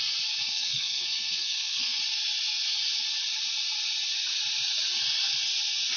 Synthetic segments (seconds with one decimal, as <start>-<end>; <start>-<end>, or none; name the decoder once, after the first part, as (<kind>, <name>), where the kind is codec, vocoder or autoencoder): 0.4-2.0 (codec, SNAC)

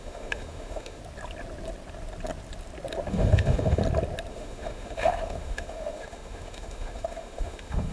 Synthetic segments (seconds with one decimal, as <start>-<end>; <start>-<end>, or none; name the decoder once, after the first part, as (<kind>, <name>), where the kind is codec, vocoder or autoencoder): 0.0-1.0 (autoencoder, DAC-VAE); 3.1-3.8; 4.3-7.9

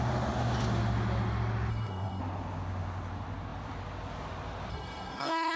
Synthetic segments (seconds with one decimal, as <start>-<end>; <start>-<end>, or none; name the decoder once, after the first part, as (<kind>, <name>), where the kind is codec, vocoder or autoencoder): 1.7-2.2 (codec, SNAC); 4.7-5.6